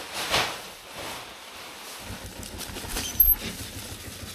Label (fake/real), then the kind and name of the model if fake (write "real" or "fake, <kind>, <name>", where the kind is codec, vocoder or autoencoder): real